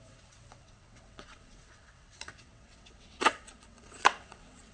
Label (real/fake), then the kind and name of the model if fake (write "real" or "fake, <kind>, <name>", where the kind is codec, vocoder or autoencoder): fake, vocoder, WaveNeXt